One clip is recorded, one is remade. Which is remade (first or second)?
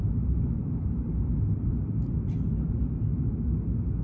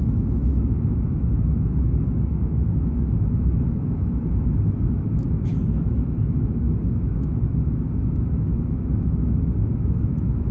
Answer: second